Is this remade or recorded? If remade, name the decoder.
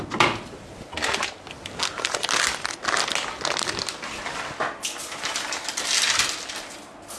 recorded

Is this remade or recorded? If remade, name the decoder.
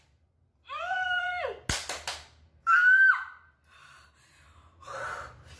recorded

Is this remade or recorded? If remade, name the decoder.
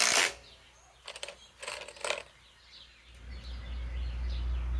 recorded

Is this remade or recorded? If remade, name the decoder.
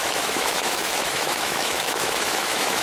remade, autoencoder, DAC-VAE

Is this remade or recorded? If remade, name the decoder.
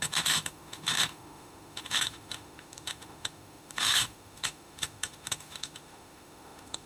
remade, autoencoder, DAC-VAE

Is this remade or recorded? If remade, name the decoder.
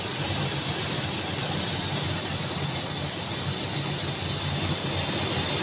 recorded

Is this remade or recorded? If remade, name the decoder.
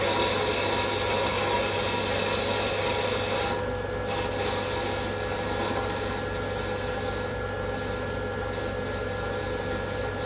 recorded